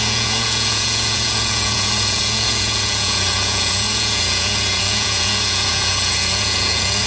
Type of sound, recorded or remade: remade